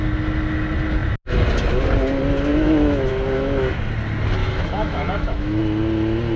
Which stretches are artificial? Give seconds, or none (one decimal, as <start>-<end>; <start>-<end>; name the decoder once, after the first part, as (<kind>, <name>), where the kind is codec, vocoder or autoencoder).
2.5-3.1 (autoencoder, DAC-VAE); 4.4-5.6